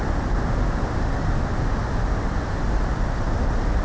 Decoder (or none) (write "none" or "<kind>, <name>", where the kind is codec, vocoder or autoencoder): none